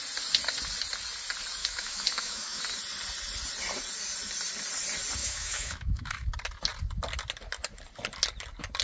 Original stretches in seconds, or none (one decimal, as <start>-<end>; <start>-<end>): 0.0-1.6; 2.6-5.2; 6.3-8.8